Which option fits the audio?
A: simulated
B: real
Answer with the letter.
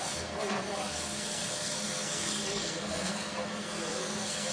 A